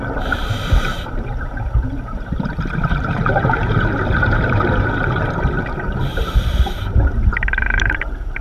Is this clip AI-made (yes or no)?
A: yes